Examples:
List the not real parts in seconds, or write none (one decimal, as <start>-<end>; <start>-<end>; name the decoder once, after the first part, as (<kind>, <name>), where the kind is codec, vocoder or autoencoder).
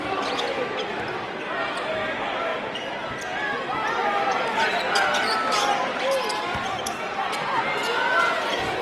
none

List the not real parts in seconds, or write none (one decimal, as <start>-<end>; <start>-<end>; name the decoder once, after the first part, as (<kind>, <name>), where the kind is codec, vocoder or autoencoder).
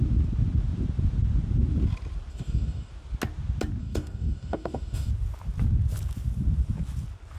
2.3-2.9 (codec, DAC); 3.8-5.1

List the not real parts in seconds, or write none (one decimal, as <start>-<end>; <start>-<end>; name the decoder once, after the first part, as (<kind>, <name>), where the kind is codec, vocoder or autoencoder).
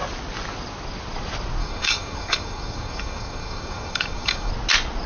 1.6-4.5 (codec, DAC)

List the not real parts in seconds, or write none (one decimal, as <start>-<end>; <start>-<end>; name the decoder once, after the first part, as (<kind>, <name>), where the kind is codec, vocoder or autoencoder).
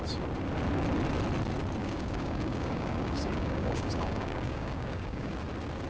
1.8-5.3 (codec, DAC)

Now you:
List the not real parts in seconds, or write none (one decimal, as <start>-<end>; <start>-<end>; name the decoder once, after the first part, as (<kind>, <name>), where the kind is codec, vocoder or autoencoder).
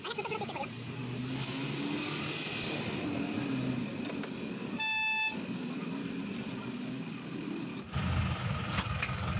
0.0-1.0 (codec, DAC); 4.2-6.0; 6.6-7.7; 8.8-9.4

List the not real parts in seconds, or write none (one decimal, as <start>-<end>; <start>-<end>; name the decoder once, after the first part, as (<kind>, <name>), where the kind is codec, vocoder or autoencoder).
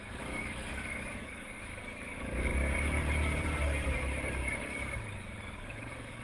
0.0-2.5 (codec, DAC); 4.6-6.2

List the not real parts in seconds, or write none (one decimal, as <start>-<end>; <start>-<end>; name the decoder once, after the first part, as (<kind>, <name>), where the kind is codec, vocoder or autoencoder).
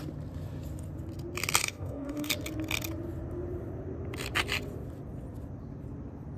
1.6-2.3 (codec, DAC)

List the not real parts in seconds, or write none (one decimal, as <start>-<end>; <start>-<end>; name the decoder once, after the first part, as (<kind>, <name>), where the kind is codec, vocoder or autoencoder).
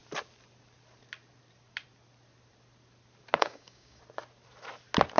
3.4-4.0 (codec, DAC)